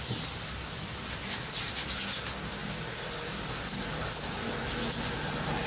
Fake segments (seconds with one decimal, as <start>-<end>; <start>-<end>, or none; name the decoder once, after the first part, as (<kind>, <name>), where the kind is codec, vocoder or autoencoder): none